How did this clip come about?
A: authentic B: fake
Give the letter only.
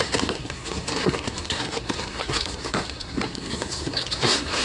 B